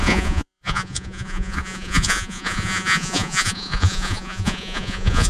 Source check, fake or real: fake